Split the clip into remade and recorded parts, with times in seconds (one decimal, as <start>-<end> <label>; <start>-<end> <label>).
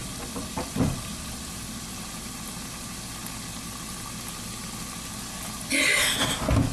0.0-1.1 remade; 1.1-6.7 recorded